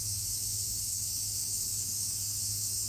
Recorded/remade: remade